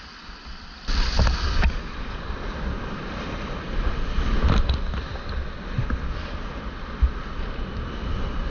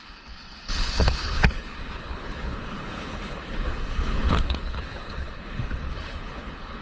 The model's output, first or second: second